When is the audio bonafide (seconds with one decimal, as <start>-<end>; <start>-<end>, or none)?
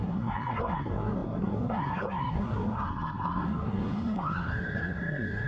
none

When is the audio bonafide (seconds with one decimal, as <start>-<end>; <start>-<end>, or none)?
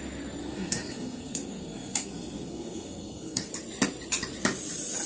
0.0-0.4; 3.5-5.1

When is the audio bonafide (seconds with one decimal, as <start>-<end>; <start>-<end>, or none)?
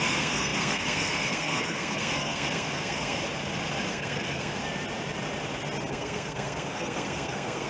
3.2-3.9; 4.6-5.9